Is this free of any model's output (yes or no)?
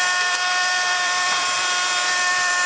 no